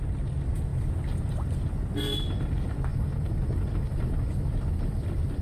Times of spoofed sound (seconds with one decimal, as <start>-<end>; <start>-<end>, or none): none